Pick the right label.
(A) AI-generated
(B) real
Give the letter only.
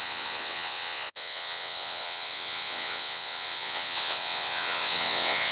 A